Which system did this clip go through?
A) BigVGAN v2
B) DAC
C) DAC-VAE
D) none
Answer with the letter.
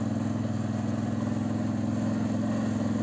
D